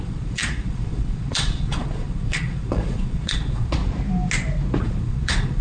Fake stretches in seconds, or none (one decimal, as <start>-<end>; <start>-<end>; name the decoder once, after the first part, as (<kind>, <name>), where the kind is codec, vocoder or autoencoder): 0.0-3.8 (vocoder, Vocos); 4.8-5.6